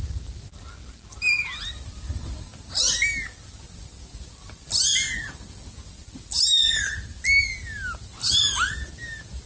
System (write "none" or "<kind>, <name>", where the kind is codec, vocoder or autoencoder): none